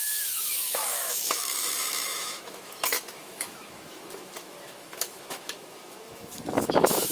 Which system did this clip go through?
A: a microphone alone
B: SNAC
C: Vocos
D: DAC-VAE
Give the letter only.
D